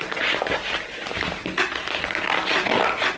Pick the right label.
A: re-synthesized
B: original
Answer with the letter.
B